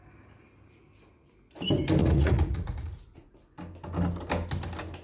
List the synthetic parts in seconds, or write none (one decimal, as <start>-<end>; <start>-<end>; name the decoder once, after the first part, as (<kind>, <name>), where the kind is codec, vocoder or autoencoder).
2.0-3.3 (vocoder, Vocos)